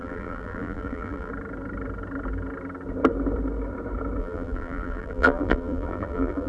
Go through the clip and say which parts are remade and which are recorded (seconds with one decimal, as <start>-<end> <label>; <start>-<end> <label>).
0.0-1.3 remade; 1.3-4.2 recorded; 4.2-6.5 remade